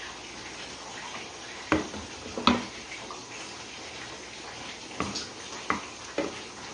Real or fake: real